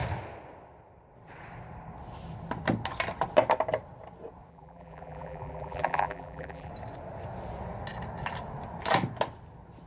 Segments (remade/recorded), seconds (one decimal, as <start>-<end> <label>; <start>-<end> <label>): 0.0-4.5 recorded; 4.5-6.7 remade; 6.7-9.9 recorded